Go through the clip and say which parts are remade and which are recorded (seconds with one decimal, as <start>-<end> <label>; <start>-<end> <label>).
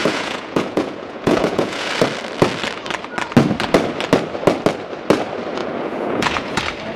0.0-1.9 remade; 1.9-5.6 recorded; 5.6-6.6 remade; 6.6-7.0 recorded